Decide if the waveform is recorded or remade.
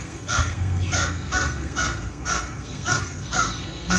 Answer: remade